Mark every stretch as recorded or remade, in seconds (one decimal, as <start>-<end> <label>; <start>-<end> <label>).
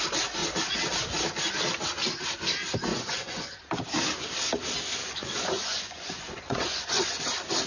0.0-2.9 recorded; 2.9-3.6 remade; 3.6-5.0 recorded; 5.0-7.2 remade; 7.2-7.7 recorded